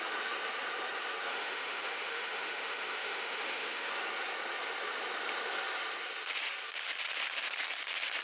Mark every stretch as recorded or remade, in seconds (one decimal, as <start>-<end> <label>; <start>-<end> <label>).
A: 0.0-1.3 recorded; 1.3-3.9 remade; 3.9-8.2 recorded